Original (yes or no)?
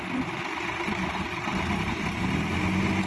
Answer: yes